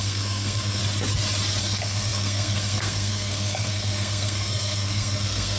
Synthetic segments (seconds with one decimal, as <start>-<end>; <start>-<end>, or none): 0.0-0.8; 1.6-5.6